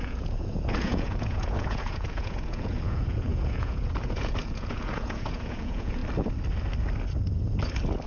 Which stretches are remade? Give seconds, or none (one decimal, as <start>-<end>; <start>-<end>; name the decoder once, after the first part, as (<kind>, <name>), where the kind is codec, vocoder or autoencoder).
0.0-6.0 (vocoder, Vocos)